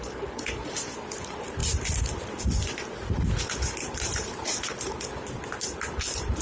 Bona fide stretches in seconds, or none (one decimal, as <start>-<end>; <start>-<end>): 0.0-6.4